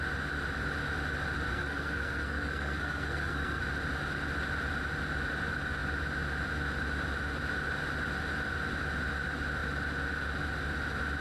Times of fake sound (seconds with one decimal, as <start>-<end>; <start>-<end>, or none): 1.5-3.6

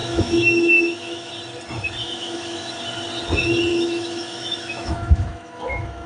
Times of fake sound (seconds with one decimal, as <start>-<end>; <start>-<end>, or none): 0.0-1.3; 2.0-2.7; 3.7-6.1